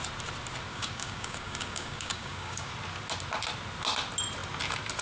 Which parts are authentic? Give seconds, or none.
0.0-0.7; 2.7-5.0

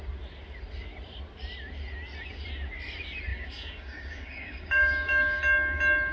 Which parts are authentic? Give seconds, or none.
0.0-3.3; 5.4-6.1